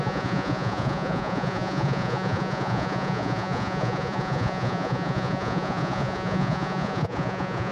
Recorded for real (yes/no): no